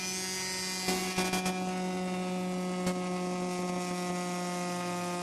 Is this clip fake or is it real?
real